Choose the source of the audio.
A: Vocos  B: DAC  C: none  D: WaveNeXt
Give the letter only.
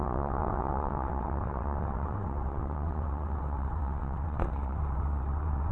D